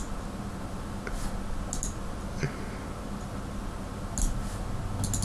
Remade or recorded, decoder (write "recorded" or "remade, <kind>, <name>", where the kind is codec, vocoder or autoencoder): recorded